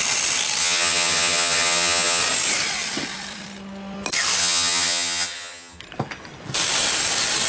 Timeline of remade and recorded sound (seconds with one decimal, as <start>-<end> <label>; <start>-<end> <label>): 0.0-0.6 recorded; 0.6-2.2 remade; 2.2-4.4 recorded; 4.4-5.8 remade; 5.8-7.5 recorded